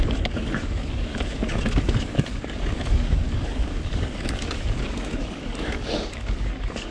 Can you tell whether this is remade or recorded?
remade